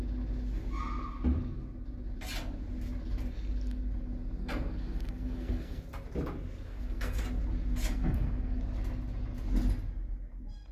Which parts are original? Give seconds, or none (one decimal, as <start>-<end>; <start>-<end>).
0.0-4.4; 5.8-6.7; 7.2-7.9; 8.6-10.7